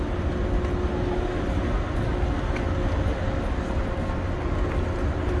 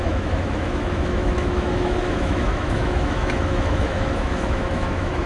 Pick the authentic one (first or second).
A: first